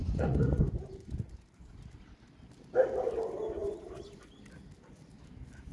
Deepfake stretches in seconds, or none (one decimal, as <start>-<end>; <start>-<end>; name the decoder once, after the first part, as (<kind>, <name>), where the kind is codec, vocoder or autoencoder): 0.0-0.6 (vocoder, Vocos)